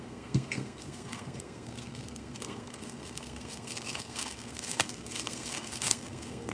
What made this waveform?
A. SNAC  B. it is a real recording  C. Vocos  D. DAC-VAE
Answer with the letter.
A